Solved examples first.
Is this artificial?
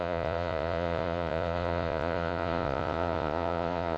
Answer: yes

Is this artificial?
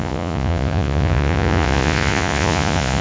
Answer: yes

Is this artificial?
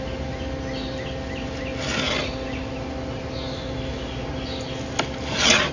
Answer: no